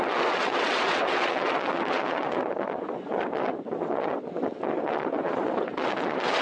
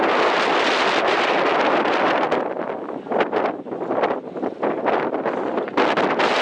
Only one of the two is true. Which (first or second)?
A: second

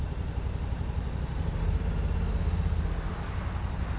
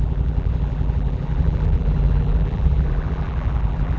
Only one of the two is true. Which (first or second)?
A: first